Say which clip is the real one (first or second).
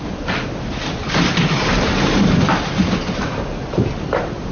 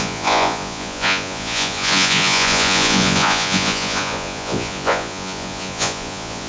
first